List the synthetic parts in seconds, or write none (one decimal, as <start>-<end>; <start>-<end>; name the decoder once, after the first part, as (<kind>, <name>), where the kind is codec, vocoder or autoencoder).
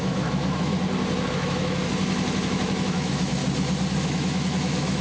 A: 0.0-0.7 (autoencoder, DAC-VAE); 1.3-1.8; 2.4-3.4; 4.0-5.0